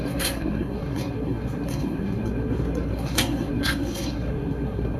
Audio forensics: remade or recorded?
remade